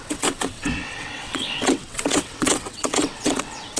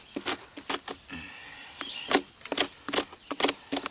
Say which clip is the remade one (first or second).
first